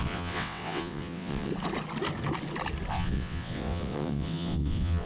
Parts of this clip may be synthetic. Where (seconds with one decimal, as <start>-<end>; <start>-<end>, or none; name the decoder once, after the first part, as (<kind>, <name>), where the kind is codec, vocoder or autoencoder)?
0.0-1.5 (vocoder, WaveNeXt); 2.9-5.1